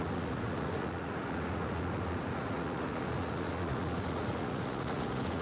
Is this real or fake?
fake